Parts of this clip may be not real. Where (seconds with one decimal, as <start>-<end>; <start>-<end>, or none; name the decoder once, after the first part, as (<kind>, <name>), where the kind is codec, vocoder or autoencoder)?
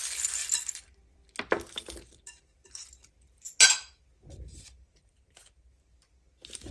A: 4.5-6.3 (vocoder, BigVGAN v2)